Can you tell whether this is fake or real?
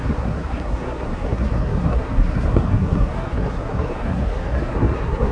fake